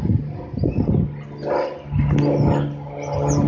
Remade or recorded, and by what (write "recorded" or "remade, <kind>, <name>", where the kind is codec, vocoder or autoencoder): recorded